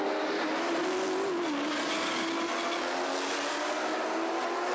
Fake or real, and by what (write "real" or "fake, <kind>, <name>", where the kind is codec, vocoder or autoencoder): real